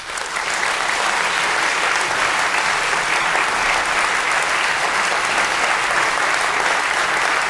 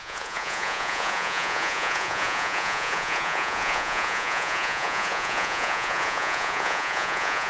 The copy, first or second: second